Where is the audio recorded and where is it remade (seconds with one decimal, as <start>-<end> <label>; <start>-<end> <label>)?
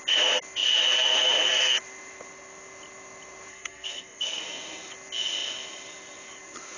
0.0-3.5 recorded; 3.5-4.4 remade; 4.4-6.8 recorded